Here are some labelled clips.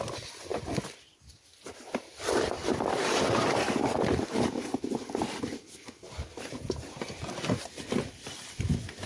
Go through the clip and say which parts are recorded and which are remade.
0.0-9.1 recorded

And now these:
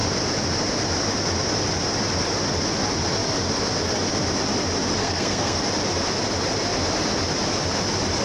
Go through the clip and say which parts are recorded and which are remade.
0.0-5.0 recorded; 5.0-5.6 remade; 5.6-8.2 recorded

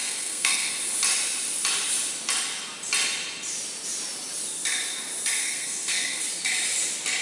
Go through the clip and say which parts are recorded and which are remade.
0.0-0.7 remade; 0.7-5.4 recorded; 5.4-6.2 remade; 6.2-7.2 recorded

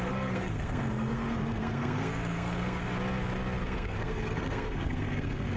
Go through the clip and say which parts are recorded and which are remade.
0.0-2.9 remade; 2.9-3.6 recorded; 3.6-5.6 remade

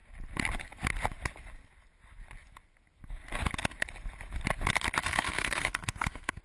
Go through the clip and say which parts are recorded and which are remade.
0.0-5.0 recorded; 5.0-6.4 remade